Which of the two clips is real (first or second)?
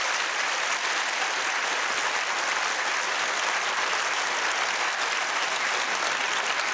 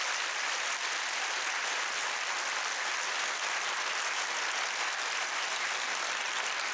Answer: second